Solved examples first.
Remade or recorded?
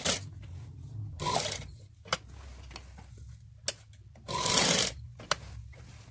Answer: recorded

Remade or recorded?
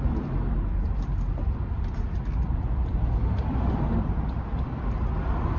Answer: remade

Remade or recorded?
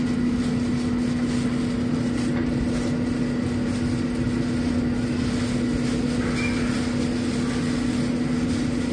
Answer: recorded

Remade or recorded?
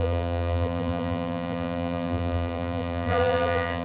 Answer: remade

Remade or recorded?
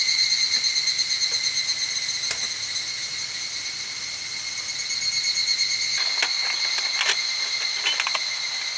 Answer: recorded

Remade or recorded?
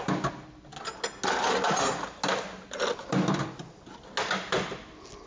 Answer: recorded